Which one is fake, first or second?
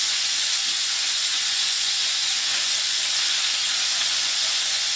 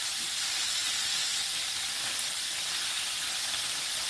first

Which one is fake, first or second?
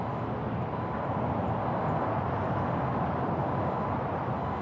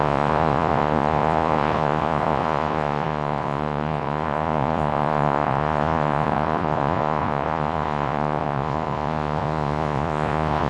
second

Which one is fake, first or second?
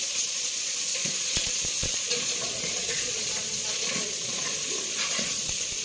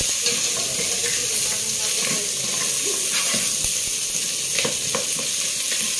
first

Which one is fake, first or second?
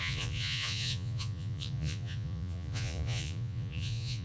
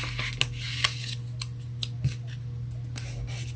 first